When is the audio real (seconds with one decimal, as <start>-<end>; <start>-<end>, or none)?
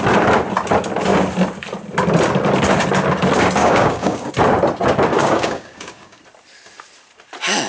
0.0-3.6; 4.3-5.2; 6.2-7.7